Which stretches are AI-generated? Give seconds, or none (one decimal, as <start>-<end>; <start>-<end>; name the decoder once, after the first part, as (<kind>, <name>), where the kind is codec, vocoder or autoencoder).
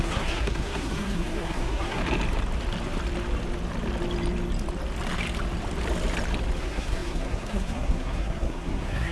0.0-2.0 (codec, SNAC); 6.6-9.1